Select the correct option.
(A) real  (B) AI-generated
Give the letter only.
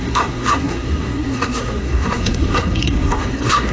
B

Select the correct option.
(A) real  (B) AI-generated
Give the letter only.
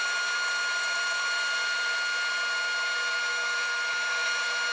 A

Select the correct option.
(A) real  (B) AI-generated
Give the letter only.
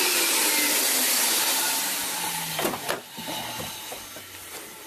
A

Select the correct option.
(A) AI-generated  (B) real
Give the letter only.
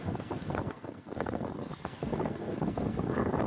A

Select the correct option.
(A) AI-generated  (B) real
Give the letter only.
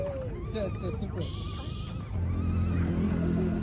B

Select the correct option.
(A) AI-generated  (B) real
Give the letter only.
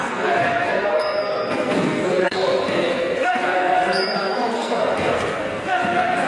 A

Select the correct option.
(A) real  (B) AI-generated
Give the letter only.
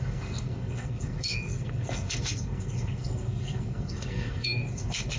B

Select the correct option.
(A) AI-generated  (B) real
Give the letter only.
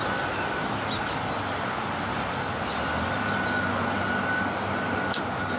B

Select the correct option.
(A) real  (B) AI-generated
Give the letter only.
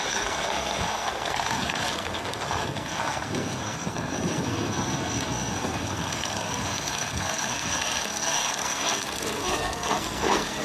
B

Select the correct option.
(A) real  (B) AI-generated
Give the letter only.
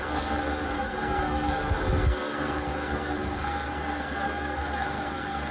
B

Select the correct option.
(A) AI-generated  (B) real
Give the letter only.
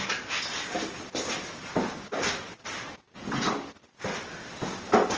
B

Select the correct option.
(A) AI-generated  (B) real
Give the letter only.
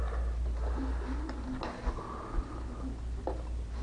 B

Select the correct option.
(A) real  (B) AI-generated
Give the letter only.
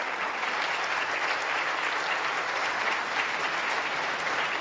A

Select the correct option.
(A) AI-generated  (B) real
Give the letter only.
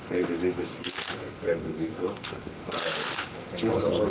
A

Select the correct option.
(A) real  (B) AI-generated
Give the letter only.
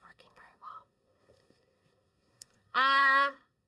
B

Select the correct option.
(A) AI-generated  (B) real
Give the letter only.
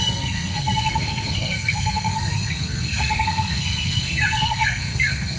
A